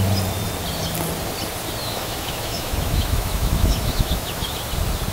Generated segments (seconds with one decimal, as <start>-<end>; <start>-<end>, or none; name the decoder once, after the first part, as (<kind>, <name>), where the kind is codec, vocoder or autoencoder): 1.8-4.6 (autoencoder, DAC-VAE)